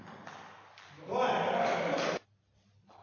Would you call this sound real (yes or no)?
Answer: yes